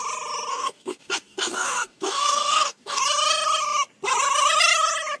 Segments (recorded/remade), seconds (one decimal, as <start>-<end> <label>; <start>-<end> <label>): 0.0-0.5 recorded; 0.5-3.0 remade; 3.0-5.2 recorded